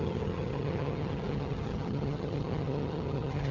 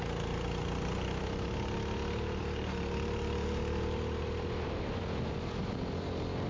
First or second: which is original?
second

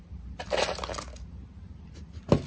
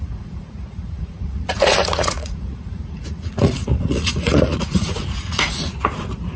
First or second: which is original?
first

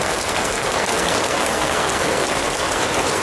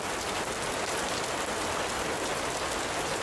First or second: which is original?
second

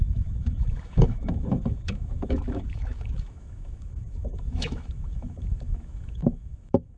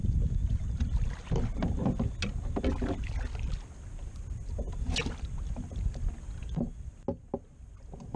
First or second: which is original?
second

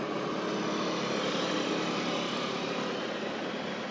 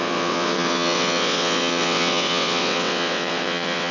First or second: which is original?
first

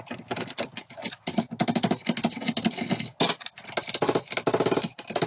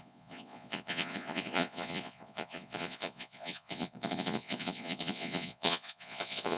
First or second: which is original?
first